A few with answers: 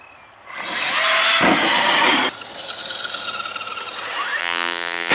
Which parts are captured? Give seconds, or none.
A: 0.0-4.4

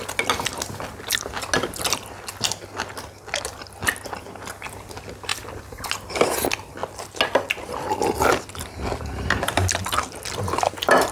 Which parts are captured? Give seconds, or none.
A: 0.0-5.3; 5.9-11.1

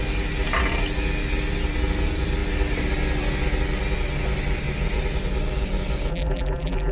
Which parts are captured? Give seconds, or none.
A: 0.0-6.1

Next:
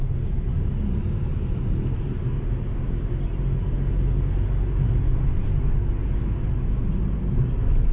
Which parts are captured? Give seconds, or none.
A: 0.0-7.9

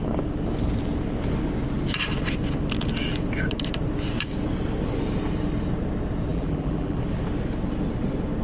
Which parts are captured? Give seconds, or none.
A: 0.0-6.3; 7.0-8.4

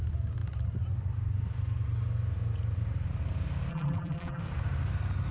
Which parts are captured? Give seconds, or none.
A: 0.0-3.7; 4.4-5.3

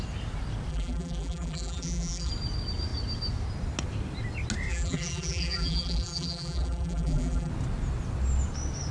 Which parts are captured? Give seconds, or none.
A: 0.0-0.7; 2.3-4.7; 7.5-8.9

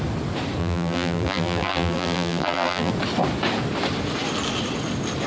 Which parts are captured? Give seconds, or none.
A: 0.0-0.6; 2.9-5.3